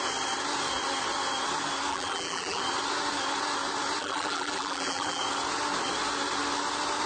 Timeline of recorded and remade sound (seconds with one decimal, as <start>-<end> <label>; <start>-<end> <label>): 0.0-1.9 recorded; 1.9-2.6 remade; 2.6-4.0 recorded; 4.0-5.2 remade; 5.2-7.1 recorded